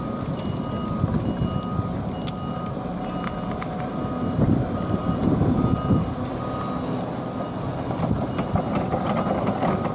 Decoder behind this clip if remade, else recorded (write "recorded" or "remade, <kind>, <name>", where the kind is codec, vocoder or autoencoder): recorded